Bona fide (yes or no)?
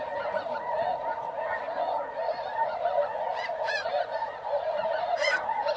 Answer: no